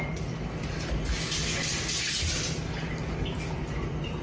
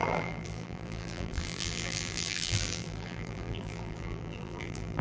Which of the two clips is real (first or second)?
first